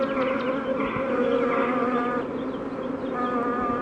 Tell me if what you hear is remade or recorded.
recorded